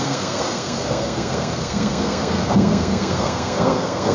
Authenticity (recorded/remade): remade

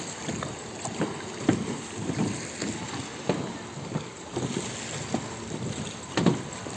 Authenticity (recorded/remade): recorded